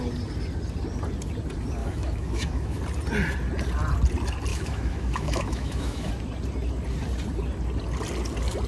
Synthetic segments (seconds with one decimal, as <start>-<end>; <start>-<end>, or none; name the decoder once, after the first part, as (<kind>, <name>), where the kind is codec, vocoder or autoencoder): 1.8-2.8 (autoencoder, DAC-VAE); 4.5-6.1